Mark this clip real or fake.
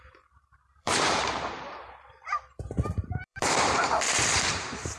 fake